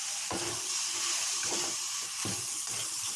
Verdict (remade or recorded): remade